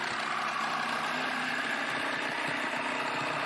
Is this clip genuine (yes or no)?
yes